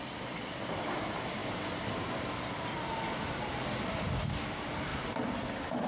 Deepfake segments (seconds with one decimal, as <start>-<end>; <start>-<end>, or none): none